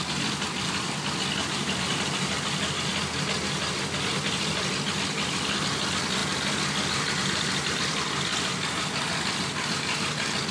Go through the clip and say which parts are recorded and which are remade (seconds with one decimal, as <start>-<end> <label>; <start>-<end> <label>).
0.0-2.9 remade; 2.9-4.4 recorded; 4.4-6.2 remade; 6.2-7.1 recorded; 7.1-10.5 remade

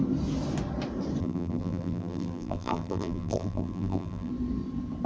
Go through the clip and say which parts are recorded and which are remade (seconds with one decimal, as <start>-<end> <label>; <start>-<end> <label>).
0.0-1.2 recorded; 1.2-4.3 remade; 4.3-5.1 recorded

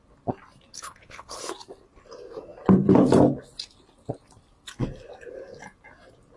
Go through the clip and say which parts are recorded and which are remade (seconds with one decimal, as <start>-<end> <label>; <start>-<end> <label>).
0.0-0.7 recorded; 0.7-1.4 remade; 1.4-6.4 recorded

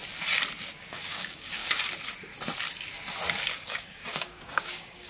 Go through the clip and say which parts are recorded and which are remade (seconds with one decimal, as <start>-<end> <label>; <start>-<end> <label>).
0.0-0.6 recorded; 0.6-1.6 remade; 1.6-3.5 recorded; 3.5-5.1 remade

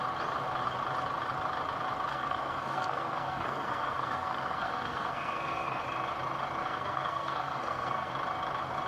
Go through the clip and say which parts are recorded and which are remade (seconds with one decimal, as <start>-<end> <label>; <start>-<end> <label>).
0.0-2.1 recorded; 2.1-5.8 remade; 5.8-6.6 recorded; 6.6-8.1 remade; 8.1-8.9 recorded